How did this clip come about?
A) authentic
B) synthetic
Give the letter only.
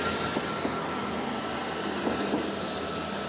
A